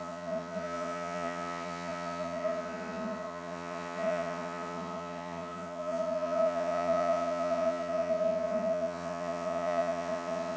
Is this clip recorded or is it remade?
remade